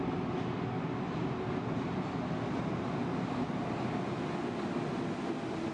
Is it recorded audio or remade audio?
recorded